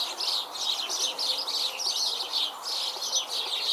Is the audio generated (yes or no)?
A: no